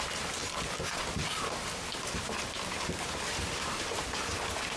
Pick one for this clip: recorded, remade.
recorded